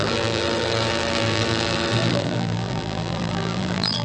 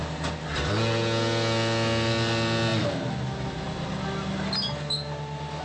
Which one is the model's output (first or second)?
first